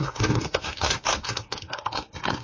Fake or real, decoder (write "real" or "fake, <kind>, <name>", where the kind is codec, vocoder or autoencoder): fake, codec, SNAC